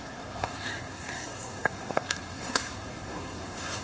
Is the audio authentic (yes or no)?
no